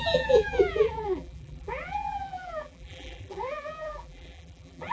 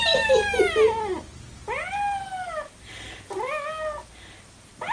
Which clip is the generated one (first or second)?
first